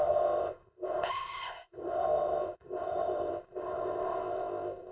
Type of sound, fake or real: fake